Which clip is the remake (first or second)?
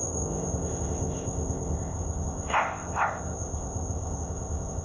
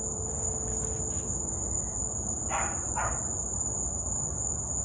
first